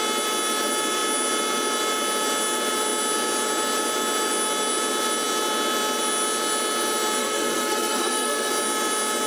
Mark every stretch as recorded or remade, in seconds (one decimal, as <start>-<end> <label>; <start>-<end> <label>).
0.0-7.2 recorded; 7.2-8.5 remade; 8.5-9.3 recorded